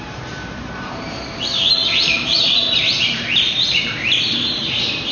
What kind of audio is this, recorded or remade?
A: remade